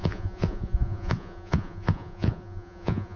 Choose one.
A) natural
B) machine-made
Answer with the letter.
B